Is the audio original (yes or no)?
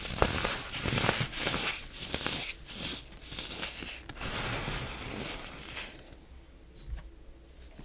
yes